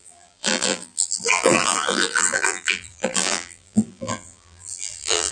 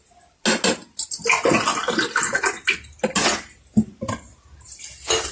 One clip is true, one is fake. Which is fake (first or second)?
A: first